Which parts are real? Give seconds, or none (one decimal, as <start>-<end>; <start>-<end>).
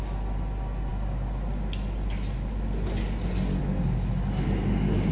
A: 0.0-5.1